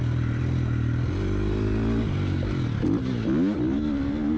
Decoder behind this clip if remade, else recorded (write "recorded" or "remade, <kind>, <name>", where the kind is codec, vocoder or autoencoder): recorded